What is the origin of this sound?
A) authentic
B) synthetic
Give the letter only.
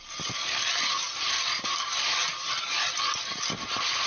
A